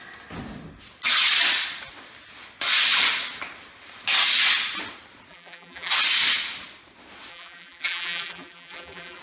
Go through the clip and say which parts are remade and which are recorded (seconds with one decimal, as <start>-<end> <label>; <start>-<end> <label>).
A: 0.0-5.3 recorded; 5.3-5.9 remade; 5.9-7.3 recorded; 7.3-9.2 remade